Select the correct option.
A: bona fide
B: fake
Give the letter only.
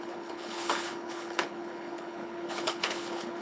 B